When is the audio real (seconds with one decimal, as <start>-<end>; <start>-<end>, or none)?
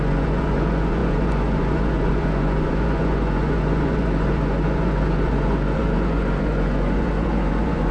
none